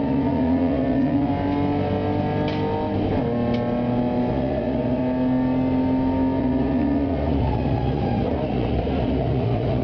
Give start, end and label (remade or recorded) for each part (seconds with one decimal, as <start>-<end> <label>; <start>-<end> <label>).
0.0-1.3 remade; 1.3-4.3 recorded; 4.3-5.0 remade; 5.0-6.4 recorded; 6.4-9.8 remade